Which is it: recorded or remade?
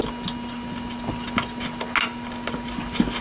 recorded